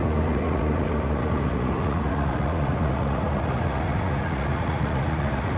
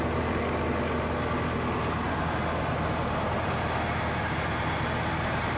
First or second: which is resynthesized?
first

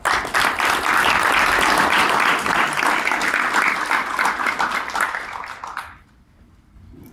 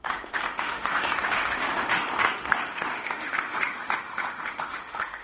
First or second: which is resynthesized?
second